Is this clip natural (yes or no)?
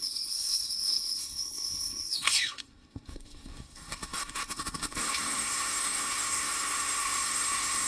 no